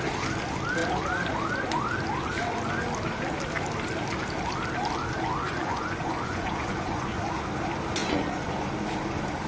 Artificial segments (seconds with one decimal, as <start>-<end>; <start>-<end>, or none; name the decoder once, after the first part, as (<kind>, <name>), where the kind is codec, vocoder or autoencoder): 5.4-7.2 (vocoder, Vocos); 8.0-8.7